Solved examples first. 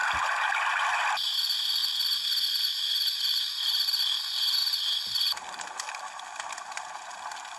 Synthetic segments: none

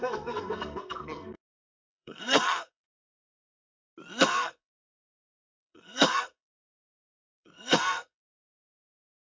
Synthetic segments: 0.0-3.0 (codec, SNAC); 4.2-9.4

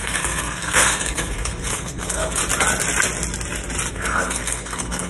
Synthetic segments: 0.0-2.4 (codec, SNAC); 3.9-5.1

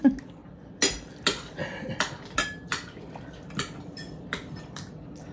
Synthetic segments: none